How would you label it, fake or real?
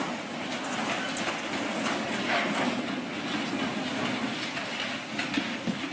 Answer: real